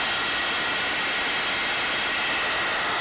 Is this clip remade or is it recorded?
recorded